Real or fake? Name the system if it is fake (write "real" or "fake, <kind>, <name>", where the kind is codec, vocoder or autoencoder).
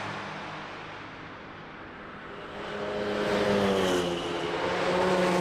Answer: real